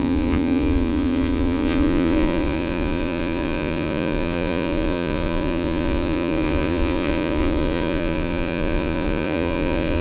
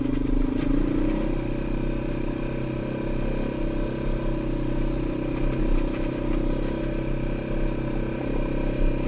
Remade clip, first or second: first